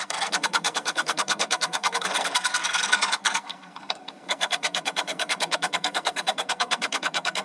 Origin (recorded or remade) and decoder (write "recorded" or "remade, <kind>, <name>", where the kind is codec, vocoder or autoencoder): remade, codec, SNAC